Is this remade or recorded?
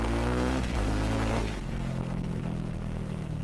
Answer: remade